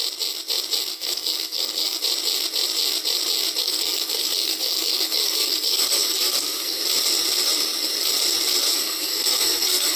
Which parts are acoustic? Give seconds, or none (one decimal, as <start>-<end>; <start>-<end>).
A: 0.0-0.9; 2.0-3.6; 6.8-8.7